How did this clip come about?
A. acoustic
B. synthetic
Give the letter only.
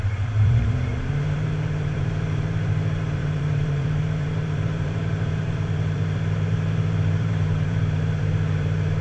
B